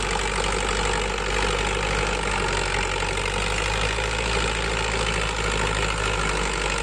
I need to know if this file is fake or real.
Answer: real